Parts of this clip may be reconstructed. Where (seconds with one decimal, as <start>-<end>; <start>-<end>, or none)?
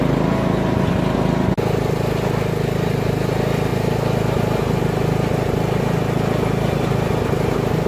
none